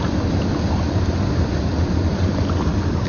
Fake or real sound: real